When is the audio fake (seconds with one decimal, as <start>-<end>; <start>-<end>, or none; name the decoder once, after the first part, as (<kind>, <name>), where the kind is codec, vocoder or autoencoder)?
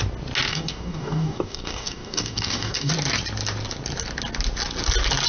0.5-2.9 (codec, DAC)